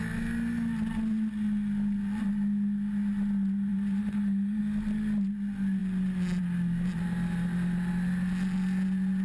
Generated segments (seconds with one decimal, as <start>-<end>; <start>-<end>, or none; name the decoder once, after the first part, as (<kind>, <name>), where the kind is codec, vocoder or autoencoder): 3.7-4.6 (vocoder, BigVGAN v2)